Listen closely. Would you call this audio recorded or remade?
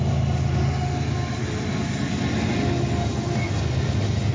recorded